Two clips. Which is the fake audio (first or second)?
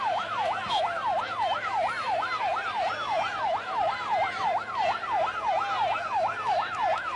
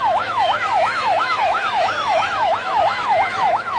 second